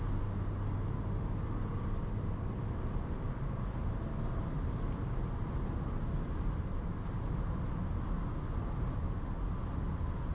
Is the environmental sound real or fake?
real